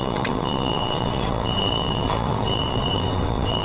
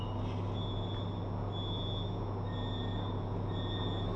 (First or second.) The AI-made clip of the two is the first